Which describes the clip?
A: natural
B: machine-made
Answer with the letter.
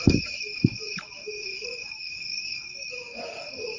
B